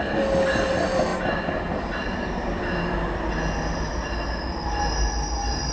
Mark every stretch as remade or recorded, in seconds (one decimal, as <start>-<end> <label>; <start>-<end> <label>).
0.0-5.7 recorded